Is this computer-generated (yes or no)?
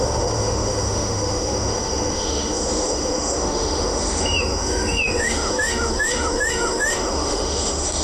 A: yes